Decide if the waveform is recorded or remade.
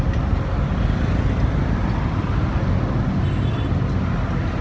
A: recorded